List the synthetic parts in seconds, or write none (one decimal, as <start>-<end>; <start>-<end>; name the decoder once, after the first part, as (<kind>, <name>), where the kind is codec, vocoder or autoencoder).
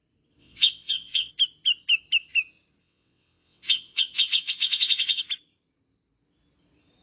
0.4-1.3 (vocoder, WaveNeXt); 2.8-5.2